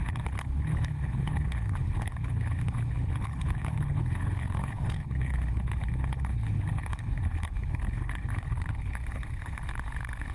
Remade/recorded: remade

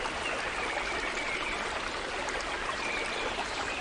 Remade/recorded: recorded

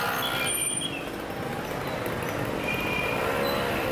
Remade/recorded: recorded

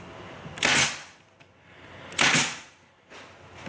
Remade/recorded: recorded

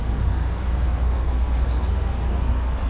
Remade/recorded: remade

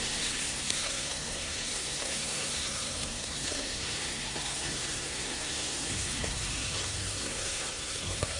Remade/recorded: remade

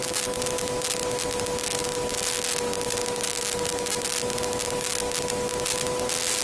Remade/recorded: recorded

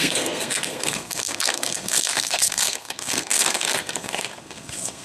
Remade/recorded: remade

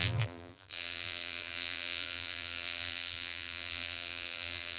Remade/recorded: remade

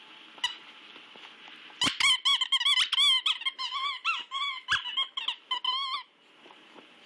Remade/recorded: recorded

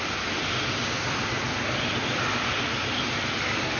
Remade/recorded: recorded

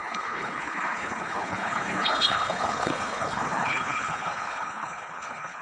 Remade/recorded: remade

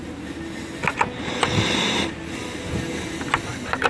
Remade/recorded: recorded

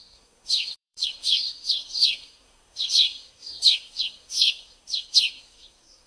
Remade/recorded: remade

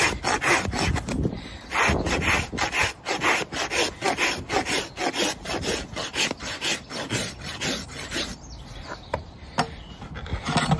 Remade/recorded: recorded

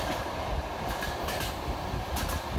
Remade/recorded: recorded